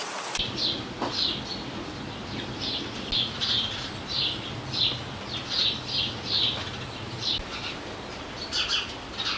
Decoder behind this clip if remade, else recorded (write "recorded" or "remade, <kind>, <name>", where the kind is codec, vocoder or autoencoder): recorded